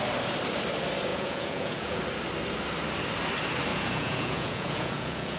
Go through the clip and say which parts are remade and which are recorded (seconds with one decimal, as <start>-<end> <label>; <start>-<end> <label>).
0.0-1.1 recorded; 1.1-2.0 remade; 2.0-3.7 recorded; 3.7-5.4 remade